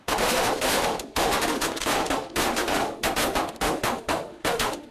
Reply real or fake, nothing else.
fake